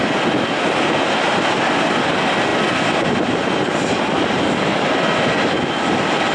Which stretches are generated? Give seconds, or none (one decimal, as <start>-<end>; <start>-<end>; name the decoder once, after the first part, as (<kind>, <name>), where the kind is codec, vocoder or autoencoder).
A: none

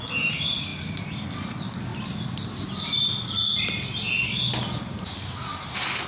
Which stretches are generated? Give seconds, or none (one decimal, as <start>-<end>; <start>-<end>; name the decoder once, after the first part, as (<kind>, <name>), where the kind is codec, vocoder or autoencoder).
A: none

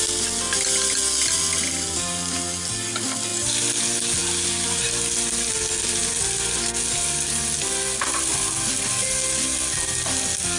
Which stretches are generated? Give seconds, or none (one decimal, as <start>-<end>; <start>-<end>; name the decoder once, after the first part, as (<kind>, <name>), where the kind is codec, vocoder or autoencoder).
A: none

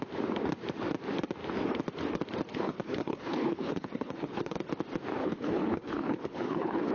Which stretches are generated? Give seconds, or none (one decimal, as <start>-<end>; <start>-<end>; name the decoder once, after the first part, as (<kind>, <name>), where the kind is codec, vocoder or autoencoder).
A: 2.5-4.7 (codec, HILCodec); 5.2-6.9